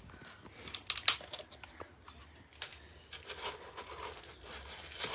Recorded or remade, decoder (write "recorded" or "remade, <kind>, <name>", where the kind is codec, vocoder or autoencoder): recorded